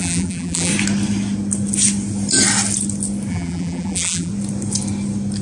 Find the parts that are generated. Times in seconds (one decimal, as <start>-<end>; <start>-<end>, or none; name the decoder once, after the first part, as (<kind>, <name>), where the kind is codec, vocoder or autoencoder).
0.0-0.7 (vocoder, BigVGAN v2); 3.3-4.3